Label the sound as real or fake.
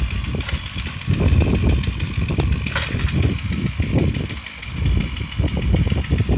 real